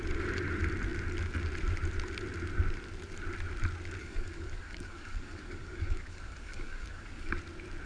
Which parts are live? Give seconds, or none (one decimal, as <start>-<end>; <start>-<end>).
0.0-4.0; 7.3-7.9